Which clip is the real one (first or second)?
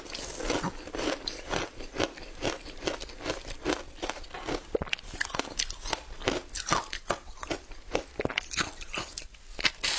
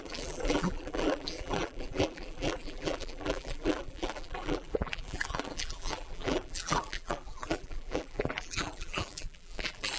first